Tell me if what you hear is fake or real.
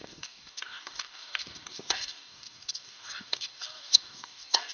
fake